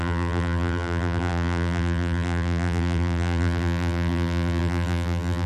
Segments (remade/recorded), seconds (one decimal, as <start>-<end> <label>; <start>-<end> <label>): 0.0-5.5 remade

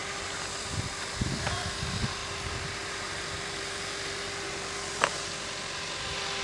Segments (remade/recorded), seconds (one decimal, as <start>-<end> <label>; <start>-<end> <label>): 0.0-1.0 remade; 1.0-2.2 recorded; 2.2-5.2 remade; 5.2-6.4 recorded

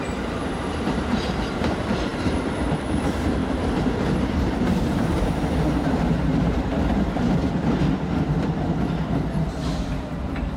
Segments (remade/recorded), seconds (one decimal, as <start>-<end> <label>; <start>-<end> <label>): 0.0-7.4 remade; 7.4-9.9 recorded; 9.9-10.6 remade

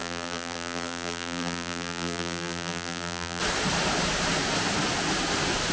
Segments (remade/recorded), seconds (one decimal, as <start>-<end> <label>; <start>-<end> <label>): 0.0-3.4 remade; 3.4-5.7 recorded

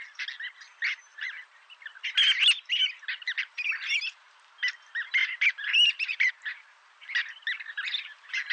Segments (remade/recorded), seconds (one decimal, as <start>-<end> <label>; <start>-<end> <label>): 0.0-1.1 recorded; 1.1-1.7 remade; 1.7-5.2 recorded; 5.2-6.3 remade; 6.3-8.5 recorded